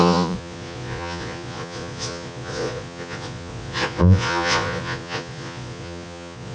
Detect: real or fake fake